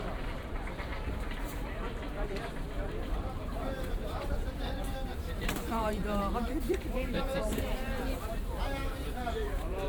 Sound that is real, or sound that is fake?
fake